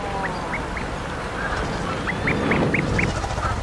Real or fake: real